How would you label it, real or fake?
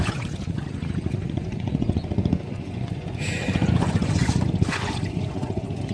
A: fake